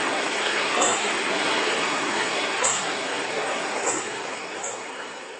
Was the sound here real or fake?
fake